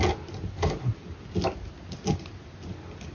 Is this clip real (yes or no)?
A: yes